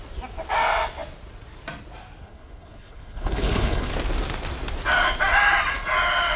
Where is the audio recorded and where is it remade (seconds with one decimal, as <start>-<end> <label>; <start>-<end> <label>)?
0.0-2.2 recorded; 2.2-3.9 remade; 3.9-6.4 recorded